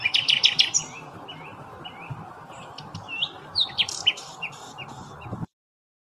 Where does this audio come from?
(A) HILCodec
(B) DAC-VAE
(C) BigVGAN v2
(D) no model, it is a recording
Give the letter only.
C